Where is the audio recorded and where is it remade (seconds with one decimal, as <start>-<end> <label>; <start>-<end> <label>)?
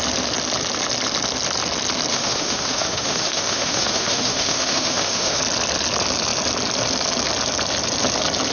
0.0-2.1 recorded; 2.1-5.4 remade; 5.4-8.5 recorded